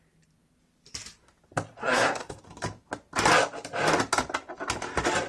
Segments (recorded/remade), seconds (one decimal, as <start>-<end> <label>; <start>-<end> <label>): 0.0-1.8 recorded; 1.8-2.4 remade; 2.4-5.3 recorded